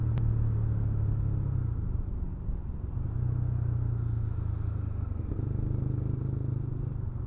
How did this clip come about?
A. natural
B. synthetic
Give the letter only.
A